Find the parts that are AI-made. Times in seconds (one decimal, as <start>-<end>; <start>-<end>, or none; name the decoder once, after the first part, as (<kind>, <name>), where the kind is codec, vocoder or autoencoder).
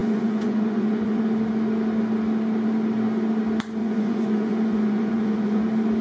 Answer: 0.0-1.2 (vocoder, Vocos); 3.8-5.6